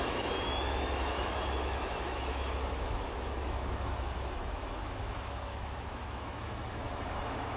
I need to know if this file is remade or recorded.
remade